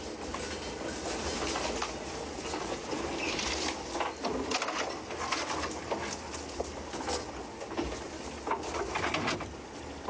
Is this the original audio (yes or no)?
yes